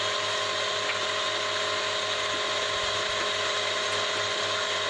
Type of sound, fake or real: real